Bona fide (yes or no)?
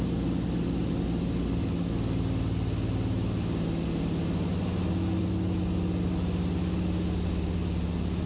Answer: yes